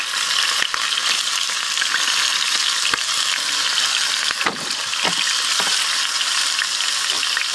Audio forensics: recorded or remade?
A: recorded